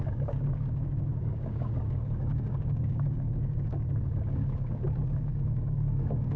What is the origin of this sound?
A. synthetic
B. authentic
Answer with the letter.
A